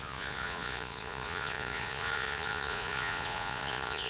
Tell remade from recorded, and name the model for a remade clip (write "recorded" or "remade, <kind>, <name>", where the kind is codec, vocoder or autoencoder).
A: remade, vocoder, Vocos